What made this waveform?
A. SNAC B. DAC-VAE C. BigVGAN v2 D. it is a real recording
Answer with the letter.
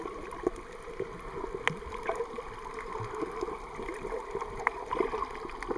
D